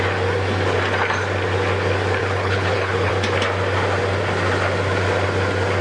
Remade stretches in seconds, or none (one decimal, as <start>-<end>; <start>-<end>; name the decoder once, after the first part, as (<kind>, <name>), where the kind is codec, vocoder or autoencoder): 2.2-3.1 (codec, HILCodec)